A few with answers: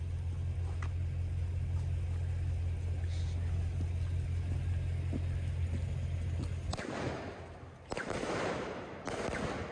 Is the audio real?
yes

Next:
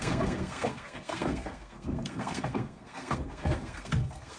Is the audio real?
no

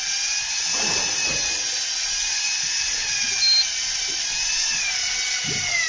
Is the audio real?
yes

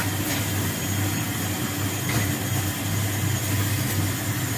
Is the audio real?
yes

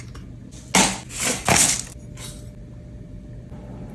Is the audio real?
yes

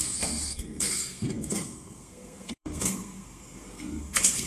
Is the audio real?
no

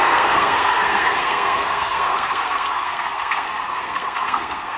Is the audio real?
no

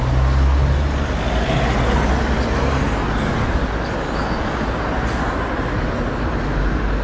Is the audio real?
yes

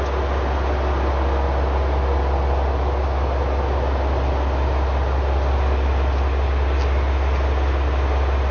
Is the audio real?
yes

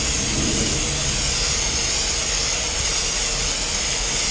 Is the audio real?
yes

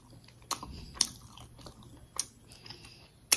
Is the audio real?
yes